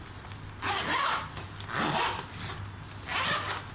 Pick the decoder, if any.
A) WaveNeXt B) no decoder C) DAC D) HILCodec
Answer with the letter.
B